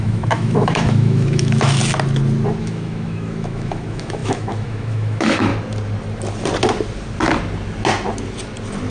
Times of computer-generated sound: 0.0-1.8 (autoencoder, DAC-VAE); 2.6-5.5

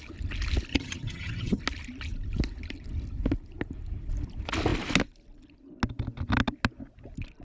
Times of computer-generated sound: 0.7-1.6 (vocoder, HiFi-GAN)

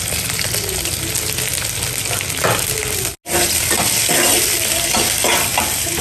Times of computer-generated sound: none